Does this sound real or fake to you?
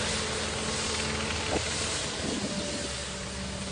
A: real